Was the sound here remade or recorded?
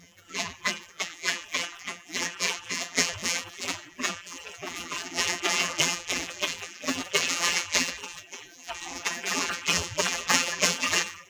remade